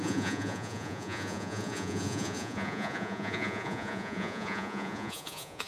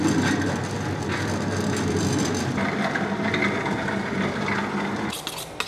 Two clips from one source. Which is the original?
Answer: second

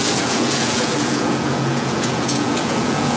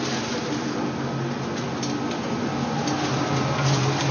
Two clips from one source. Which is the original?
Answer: second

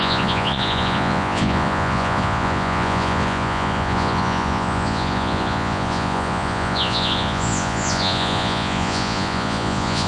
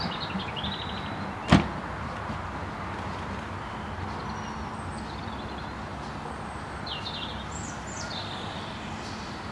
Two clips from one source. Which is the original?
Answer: second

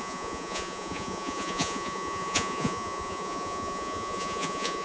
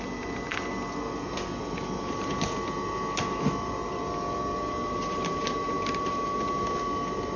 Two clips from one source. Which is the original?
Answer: second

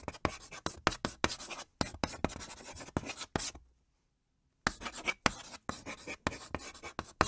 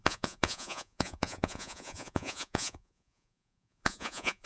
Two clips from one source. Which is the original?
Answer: first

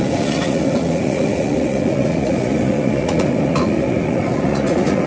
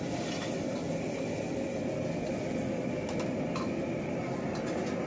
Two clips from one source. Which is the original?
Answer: second